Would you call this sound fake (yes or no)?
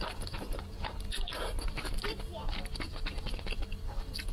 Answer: no